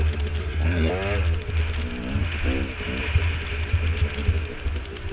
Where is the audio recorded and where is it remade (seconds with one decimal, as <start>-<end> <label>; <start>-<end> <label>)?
0.0-0.4 recorded; 0.4-0.9 remade; 0.9-5.1 recorded